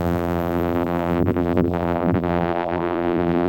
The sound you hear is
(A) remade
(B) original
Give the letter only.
A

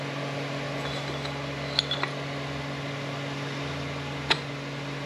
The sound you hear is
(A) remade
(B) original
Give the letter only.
B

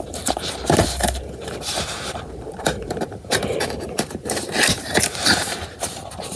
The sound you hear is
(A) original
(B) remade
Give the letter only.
B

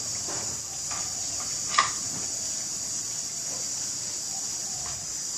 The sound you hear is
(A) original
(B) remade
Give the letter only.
A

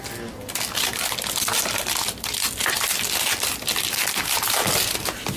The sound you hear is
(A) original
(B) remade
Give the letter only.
A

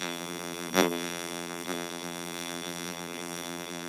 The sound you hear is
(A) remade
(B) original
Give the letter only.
A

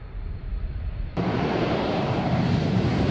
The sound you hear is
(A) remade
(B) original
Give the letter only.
A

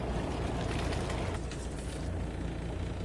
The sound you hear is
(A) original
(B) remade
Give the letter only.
A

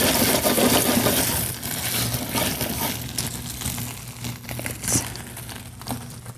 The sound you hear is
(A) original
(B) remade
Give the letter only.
A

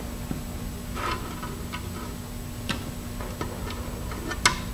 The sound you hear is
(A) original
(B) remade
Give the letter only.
A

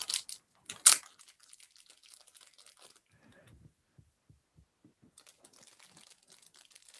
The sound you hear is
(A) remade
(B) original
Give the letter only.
B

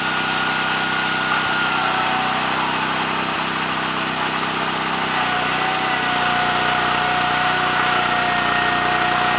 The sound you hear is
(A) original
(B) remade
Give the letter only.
A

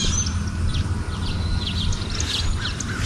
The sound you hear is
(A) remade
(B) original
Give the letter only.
B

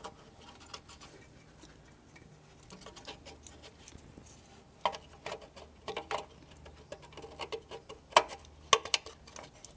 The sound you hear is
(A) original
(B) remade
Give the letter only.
A